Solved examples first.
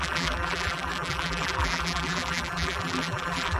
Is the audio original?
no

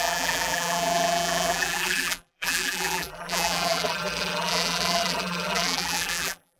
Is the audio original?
no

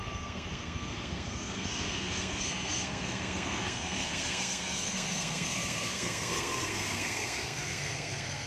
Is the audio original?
no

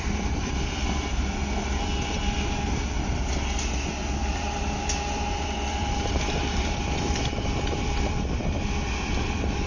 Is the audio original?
no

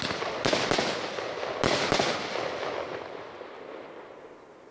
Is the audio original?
yes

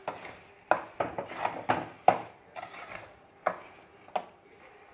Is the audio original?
yes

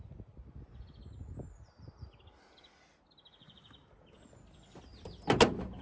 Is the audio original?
yes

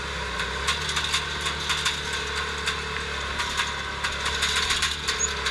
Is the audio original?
yes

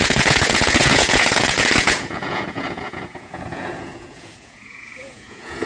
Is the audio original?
no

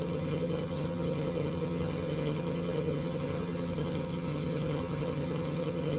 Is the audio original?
no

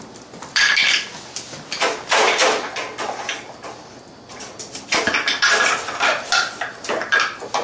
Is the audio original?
yes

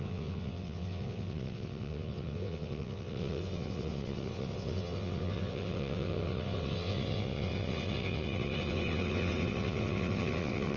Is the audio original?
no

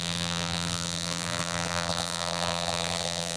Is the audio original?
no